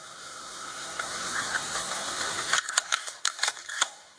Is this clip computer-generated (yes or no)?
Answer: yes